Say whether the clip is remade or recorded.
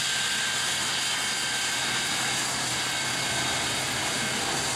recorded